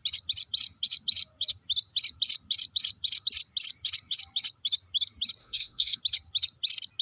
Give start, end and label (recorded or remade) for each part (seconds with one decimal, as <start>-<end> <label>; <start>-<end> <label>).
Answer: 0.0-5.4 recorded; 5.4-6.0 remade; 6.0-7.0 recorded